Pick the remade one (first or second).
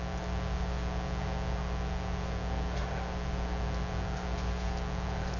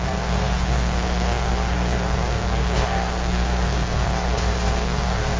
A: second